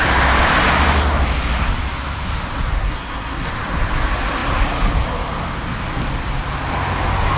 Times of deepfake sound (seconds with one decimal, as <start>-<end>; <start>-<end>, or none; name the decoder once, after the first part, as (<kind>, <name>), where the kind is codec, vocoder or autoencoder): 2.8-3.5 (codec, SNAC)